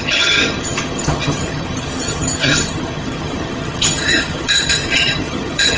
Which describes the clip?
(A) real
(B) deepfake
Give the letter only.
B